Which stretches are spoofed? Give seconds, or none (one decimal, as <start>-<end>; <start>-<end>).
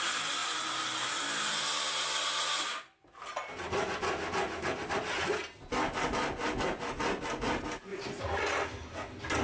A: none